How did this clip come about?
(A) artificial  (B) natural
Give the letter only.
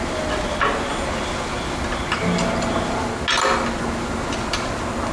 B